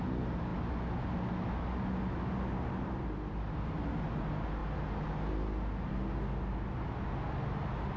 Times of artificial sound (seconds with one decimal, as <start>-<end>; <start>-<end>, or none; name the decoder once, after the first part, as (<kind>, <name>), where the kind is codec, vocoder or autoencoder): none